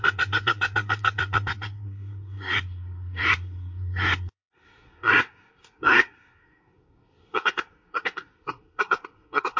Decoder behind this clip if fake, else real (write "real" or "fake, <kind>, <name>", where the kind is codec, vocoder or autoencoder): fake, codec, SNAC